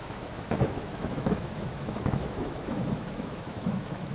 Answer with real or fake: fake